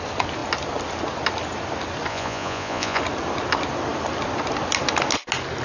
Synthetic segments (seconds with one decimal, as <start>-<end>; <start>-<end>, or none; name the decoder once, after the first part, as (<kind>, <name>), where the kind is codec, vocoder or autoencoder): 2.1-3.0 (vocoder, Vocos)

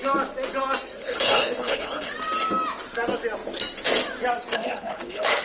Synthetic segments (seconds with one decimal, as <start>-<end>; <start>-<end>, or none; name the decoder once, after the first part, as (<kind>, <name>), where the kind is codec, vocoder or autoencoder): 1.0-2.1 (codec, HILCodec); 4.5-5.4

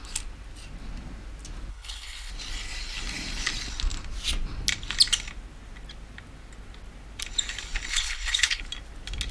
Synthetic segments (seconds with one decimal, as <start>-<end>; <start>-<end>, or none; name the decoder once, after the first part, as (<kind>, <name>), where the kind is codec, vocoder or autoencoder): 1.7-2.3 (codec, HILCodec); 7.9-8.6

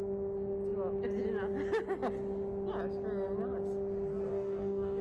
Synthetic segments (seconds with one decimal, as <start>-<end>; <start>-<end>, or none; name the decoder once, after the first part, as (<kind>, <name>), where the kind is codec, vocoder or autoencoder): 4.3-5.0 (codec, DAC)

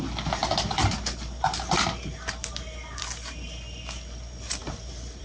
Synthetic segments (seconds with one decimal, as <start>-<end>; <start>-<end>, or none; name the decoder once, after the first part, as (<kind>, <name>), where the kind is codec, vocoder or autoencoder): none